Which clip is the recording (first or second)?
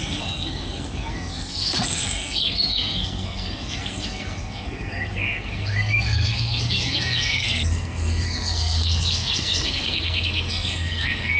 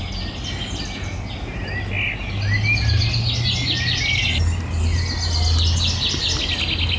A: second